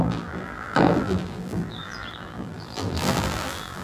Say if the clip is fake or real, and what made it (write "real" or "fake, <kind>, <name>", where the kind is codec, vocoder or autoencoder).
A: fake, vocoder, BigVGAN v2